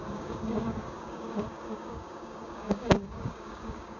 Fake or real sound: fake